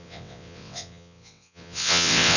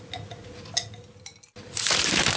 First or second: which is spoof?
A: first